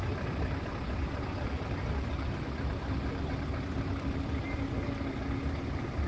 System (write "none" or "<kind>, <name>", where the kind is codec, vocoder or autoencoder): none